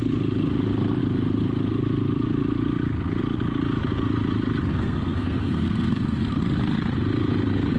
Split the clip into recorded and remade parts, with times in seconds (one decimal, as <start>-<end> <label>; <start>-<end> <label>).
0.0-4.7 recorded; 4.7-6.4 remade; 6.4-7.8 recorded